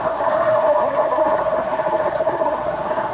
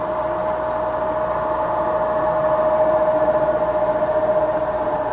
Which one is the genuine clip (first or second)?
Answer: second